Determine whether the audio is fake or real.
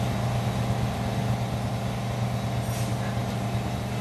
real